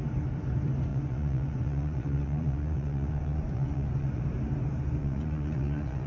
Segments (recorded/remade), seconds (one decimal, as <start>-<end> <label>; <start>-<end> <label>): 0.0-0.9 recorded; 0.9-4.2 remade; 4.2-5.0 recorded; 5.0-6.1 remade